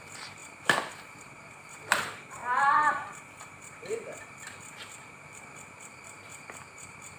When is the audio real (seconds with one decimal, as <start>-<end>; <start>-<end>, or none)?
none